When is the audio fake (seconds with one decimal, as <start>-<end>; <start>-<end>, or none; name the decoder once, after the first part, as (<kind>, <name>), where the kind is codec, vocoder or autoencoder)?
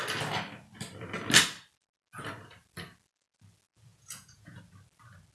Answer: 3.9-4.6 (vocoder, Vocos)